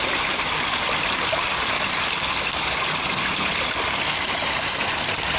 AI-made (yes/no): no